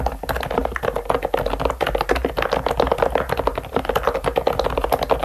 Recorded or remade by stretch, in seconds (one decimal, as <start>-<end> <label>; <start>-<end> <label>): 0.0-5.2 recorded

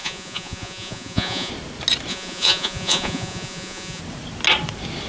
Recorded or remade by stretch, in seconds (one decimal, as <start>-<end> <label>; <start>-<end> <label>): 0.0-1.5 remade; 1.5-2.1 recorded; 2.1-4.0 remade; 4.0-5.1 recorded

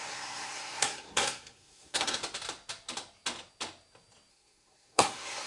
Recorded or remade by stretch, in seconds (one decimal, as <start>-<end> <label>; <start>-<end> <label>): 0.0-2.2 remade; 2.2-4.3 recorded; 4.3-5.5 remade

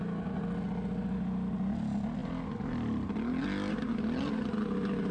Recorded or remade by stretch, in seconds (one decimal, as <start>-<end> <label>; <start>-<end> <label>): 0.0-5.1 recorded

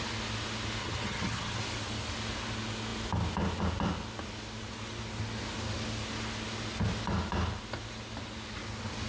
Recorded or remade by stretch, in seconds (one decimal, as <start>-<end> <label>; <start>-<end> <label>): 0.0-0.8 recorded; 0.8-1.6 remade; 1.6-9.1 recorded